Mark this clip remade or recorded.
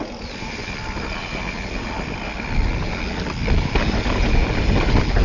recorded